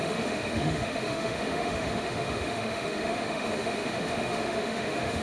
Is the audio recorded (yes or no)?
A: no